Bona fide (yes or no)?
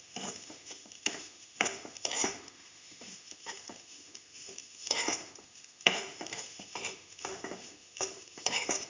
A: no